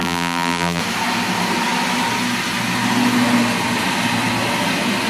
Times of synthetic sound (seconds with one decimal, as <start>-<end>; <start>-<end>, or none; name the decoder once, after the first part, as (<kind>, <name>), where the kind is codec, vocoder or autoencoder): 0.0-0.8 (vocoder, BigVGAN v2)